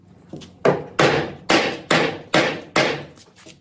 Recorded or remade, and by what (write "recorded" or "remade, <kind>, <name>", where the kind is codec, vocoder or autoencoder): recorded